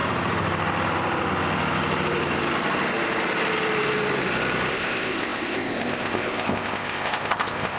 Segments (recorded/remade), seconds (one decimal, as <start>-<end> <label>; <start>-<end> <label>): 0.0-4.7 recorded; 4.7-7.8 remade

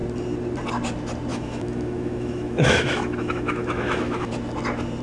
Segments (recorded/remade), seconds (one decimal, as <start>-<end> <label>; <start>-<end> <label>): 0.0-1.3 recorded; 1.3-4.3 remade; 4.3-5.0 recorded

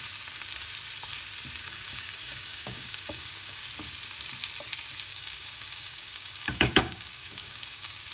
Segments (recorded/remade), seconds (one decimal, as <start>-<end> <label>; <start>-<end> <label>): 0.0-1.6 recorded; 1.6-3.6 remade; 3.6-5.1 recorded; 5.1-8.1 remade

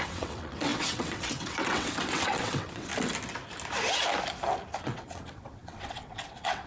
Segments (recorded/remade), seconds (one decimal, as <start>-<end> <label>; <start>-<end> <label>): 0.0-2.9 remade; 2.9-4.8 recorded; 4.8-6.7 remade

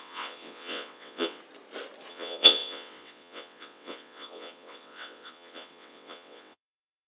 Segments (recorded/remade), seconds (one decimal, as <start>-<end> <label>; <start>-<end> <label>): 0.0-1.4 remade; 1.4-2.1 recorded; 2.1-7.1 remade